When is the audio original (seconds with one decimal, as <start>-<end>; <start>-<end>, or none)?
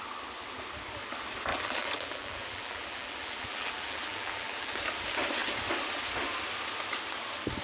0.0-1.5; 4.8-7.6